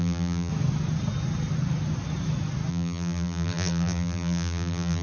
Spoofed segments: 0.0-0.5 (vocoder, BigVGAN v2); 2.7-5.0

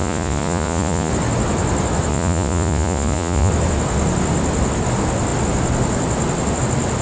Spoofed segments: 0.0-1.1 (vocoder, Vocos); 2.1-3.5

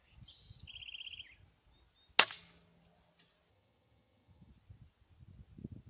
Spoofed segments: 3.5-4.5 (vocoder, HiFi-GAN)

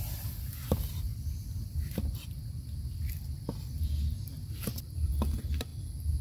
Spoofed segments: none

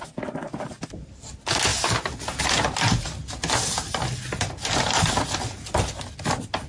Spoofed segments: none

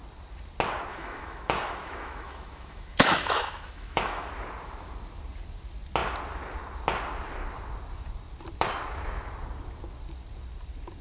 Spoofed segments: 0.9-4.3 (autoencoder, DAC-VAE)